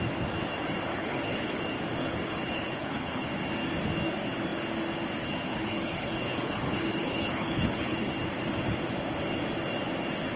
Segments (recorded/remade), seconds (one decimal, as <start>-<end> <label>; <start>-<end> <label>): 0.0-0.9 recorded; 0.9-1.6 remade; 1.6-2.0 recorded; 2.0-3.3 remade; 3.3-5.5 recorded; 5.5-8.1 remade; 8.1-10.4 recorded